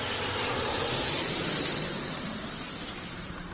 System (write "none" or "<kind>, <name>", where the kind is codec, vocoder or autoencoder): vocoder, BigVGAN v2